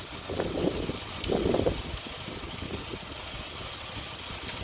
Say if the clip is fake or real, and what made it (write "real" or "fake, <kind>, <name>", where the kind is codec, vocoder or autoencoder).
real